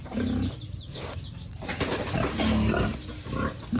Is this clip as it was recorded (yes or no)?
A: yes